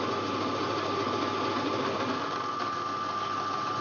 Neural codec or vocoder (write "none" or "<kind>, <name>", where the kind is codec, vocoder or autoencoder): none